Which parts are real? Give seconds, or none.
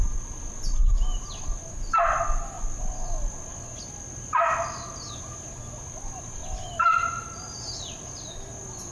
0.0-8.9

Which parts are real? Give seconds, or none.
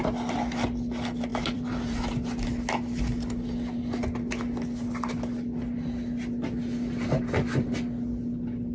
0.0-1.3; 2.1-8.7